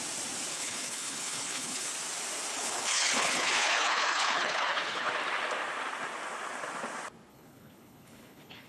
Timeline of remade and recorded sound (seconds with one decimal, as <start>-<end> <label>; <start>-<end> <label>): 0.0-0.5 recorded; 0.5-1.9 remade; 1.9-2.5 recorded; 2.5-5.1 remade; 5.1-7.3 recorded; 7.3-8.7 remade